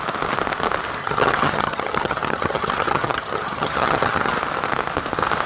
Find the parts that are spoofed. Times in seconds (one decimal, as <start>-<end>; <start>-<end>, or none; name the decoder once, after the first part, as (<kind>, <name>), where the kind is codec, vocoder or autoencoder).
1.0-4.3 (vocoder, HiFi-GAN)